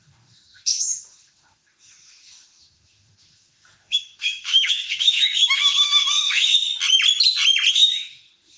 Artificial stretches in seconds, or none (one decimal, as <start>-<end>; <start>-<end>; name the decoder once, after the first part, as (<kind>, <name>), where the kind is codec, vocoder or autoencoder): 0.0-6.7 (autoencoder, DAC-VAE); 7.7-8.6